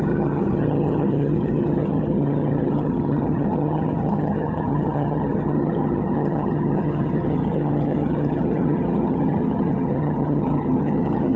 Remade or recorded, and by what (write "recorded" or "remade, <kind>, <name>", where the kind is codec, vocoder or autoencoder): remade, vocoder, HiFi-GAN